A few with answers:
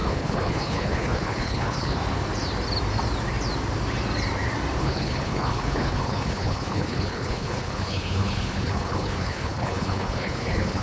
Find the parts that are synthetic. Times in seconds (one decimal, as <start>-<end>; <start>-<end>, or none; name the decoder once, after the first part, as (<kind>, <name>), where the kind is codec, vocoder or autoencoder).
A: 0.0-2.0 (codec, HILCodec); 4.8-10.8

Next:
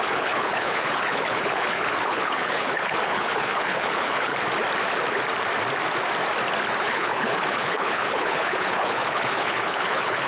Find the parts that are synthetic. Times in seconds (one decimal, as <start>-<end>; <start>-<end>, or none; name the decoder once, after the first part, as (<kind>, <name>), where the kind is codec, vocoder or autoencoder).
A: 0.0-4.3 (codec, HILCodec); 6.8-10.3

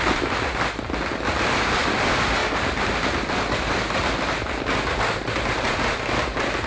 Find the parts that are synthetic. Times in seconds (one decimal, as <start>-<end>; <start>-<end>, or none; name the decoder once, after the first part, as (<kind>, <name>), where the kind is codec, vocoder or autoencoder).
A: none